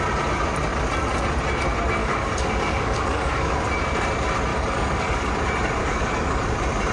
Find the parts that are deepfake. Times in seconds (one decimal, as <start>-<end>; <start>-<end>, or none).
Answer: 2.0-3.5; 4.5-5.3; 5.8-6.4